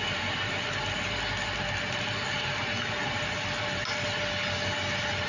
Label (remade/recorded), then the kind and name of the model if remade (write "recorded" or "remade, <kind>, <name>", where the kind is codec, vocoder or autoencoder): recorded